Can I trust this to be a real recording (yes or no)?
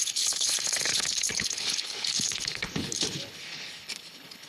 no